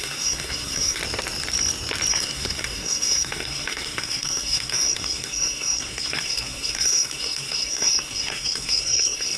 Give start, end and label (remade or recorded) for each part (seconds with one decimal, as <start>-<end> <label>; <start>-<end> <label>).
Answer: 0.0-1.0 remade; 1.0-2.1 recorded; 2.1-9.4 remade